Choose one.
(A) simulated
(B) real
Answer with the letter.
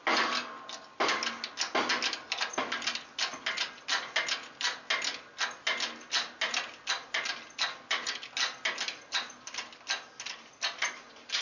B